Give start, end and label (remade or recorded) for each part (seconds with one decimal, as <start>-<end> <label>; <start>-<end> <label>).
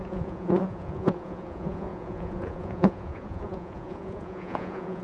0.0-5.0 remade